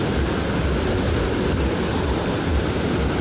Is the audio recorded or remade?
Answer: recorded